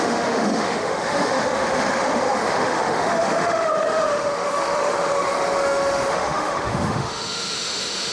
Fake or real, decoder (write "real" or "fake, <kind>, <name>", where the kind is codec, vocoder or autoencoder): fake, autoencoder, DAC-VAE